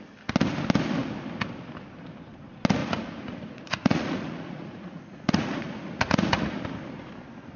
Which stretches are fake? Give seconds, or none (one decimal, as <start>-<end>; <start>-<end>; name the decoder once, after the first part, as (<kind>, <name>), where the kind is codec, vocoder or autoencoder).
2.8-6.6 (vocoder, Vocos)